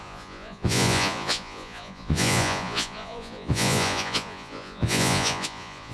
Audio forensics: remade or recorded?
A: remade